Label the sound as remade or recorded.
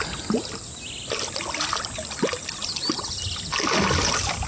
recorded